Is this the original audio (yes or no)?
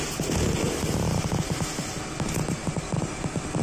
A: yes